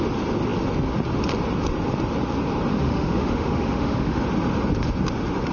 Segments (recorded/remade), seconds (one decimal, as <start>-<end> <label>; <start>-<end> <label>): 0.0-2.7 recorded; 2.7-4.2 remade; 4.2-5.5 recorded